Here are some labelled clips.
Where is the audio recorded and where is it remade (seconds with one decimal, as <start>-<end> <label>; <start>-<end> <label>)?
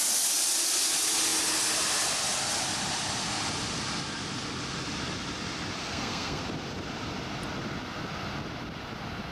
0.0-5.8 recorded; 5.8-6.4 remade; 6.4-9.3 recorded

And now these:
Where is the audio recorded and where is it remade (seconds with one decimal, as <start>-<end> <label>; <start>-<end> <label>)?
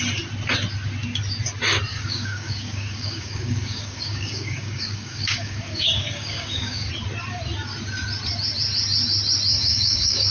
0.0-1.9 recorded; 1.9-6.9 remade; 6.9-9.5 recorded; 9.5-10.3 remade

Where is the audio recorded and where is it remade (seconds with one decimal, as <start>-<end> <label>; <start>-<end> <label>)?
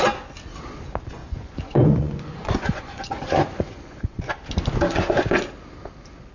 0.0-1.2 recorded; 1.2-4.3 remade; 4.3-4.8 recorded; 4.8-5.4 remade; 5.4-6.3 recorded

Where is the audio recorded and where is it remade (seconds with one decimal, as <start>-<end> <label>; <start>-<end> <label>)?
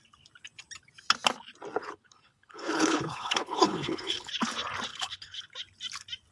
0.0-1.8 recorded; 1.8-4.3 remade; 4.3-4.9 recorded; 4.9-5.4 remade; 5.4-6.3 recorded